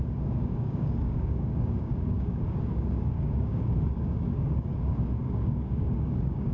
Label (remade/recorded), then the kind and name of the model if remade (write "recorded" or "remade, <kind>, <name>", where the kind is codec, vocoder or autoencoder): remade, codec, DAC